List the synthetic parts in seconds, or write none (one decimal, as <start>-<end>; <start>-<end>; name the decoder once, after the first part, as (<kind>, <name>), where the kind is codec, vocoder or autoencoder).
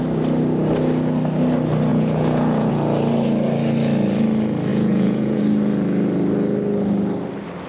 1.9-2.7 (vocoder, Vocos); 4.7-5.4